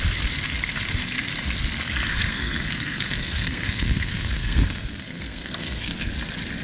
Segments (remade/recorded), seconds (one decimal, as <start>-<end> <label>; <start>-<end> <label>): 0.0-2.2 recorded; 2.2-6.1 remade; 6.1-6.6 recorded